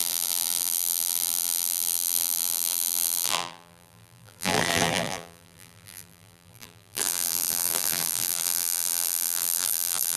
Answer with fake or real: fake